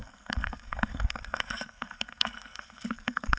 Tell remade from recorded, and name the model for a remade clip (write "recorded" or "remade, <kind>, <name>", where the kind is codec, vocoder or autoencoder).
remade, codec, SNAC